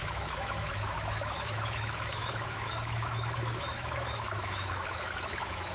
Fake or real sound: fake